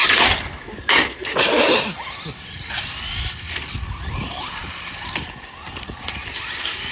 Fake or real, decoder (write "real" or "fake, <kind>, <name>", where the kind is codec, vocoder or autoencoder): real